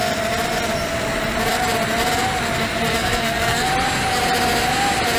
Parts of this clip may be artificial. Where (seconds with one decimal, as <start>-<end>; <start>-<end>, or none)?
2.9-3.7